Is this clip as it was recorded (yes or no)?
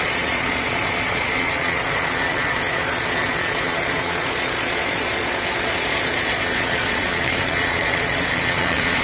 no